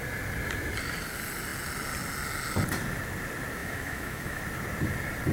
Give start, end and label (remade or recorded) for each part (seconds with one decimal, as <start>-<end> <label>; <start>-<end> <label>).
0.0-3.6 recorded; 3.6-4.4 remade; 4.4-5.3 recorded